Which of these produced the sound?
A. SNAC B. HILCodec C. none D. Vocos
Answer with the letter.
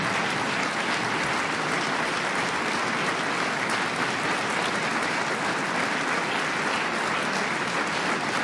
C